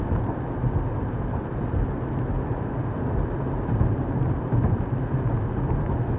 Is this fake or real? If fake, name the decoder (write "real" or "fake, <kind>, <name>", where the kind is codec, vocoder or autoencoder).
real